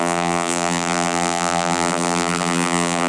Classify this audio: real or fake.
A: fake